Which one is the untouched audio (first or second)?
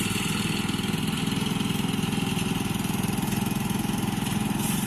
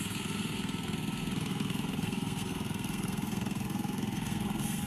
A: first